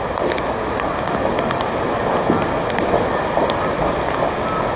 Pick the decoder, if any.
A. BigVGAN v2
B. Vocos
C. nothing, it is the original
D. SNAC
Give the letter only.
C